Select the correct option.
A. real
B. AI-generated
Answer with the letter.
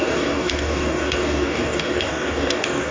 B